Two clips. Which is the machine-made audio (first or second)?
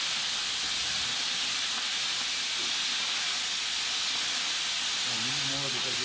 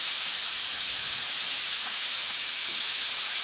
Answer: second